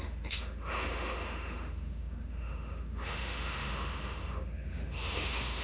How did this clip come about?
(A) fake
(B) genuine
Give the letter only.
A